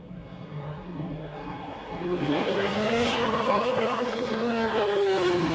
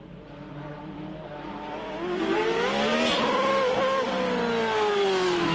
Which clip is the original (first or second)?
second